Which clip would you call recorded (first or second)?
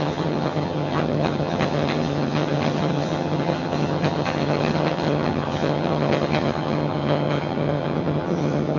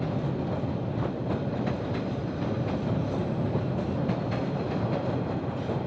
second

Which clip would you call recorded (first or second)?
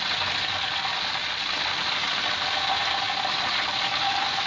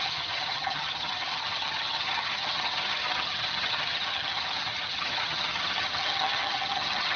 first